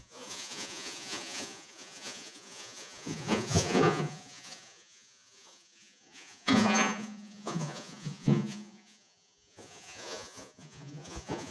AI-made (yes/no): yes